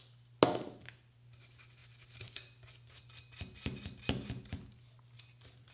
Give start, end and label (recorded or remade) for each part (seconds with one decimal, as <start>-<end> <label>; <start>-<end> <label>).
0.0-5.7 recorded